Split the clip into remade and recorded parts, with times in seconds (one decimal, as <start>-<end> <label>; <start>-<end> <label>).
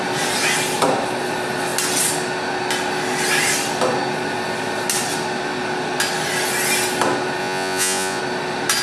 0.0-7.4 recorded; 7.4-8.2 remade; 8.2-8.8 recorded